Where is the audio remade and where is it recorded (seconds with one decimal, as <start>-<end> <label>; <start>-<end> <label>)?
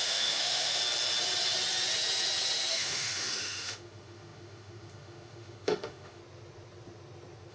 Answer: 0.0-0.8 remade; 0.8-2.7 recorded; 2.7-6.2 remade; 6.2-7.5 recorded